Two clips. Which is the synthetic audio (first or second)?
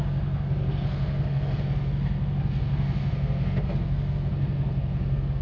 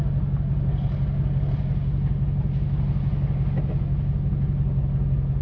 first